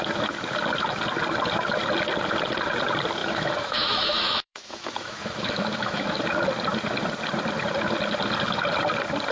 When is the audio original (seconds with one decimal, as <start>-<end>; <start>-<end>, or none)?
0.0-3.2; 6.2-9.3